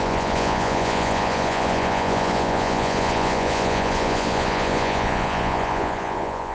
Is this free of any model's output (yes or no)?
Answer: no